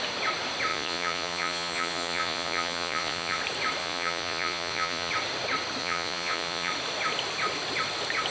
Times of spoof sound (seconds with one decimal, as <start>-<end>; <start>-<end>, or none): 0.7-3.4; 3.8-5.1; 5.8-6.7